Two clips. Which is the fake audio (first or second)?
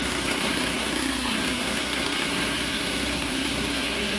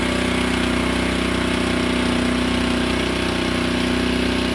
first